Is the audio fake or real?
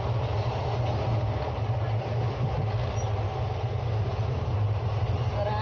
real